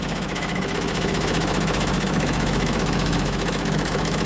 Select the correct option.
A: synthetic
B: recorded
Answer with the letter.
A